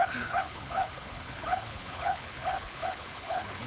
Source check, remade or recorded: remade